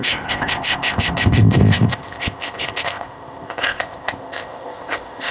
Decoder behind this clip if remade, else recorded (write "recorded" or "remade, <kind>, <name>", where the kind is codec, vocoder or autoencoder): remade, codec, ZipCodec